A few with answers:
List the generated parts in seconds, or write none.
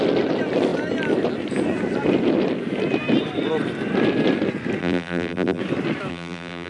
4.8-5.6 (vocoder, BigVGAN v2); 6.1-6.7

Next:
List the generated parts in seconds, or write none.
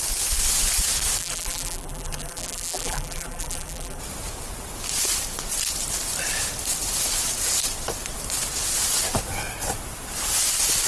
1.2-4.0 (vocoder, BigVGAN v2)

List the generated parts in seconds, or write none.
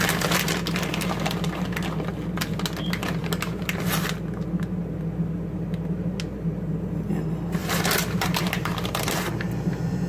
3.2-3.8 (vocoder, BigVGAN v2); 7.6-9.1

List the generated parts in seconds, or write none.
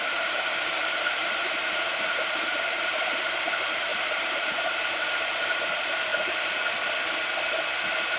0.0-6.1 (vocoder, BigVGAN v2)